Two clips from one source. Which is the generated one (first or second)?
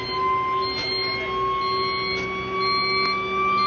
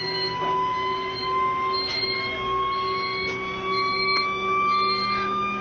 second